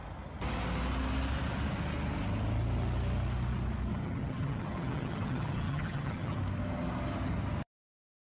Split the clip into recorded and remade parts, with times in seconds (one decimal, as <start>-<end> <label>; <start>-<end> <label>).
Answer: 0.0-3.9 recorded; 3.9-6.4 remade; 6.4-8.4 recorded